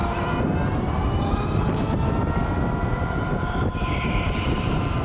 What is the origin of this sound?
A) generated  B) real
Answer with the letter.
B